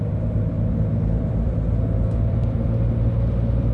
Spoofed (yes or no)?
yes